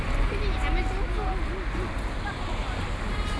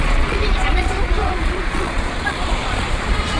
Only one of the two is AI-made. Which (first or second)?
second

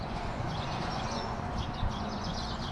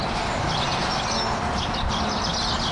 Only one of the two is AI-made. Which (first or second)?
first